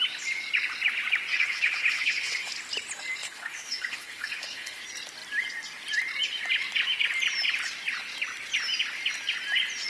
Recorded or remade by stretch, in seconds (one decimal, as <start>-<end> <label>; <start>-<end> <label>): 0.0-1.3 recorded; 1.3-2.5 remade; 2.5-3.2 recorded; 3.2-4.8 remade; 4.8-9.9 recorded